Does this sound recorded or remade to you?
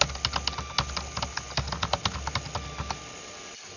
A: recorded